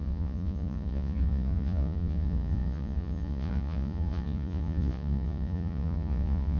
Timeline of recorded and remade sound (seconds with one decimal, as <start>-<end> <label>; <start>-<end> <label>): 0.0-6.6 remade